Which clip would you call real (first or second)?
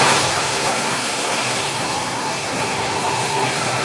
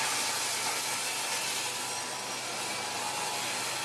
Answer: second